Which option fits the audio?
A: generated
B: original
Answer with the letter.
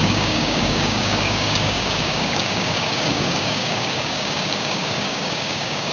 A